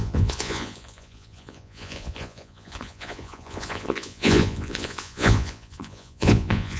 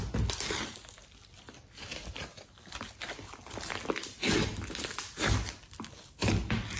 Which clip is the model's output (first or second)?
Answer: first